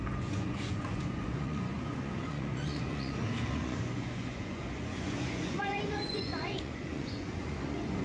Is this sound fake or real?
fake